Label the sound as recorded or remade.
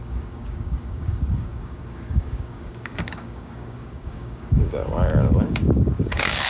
remade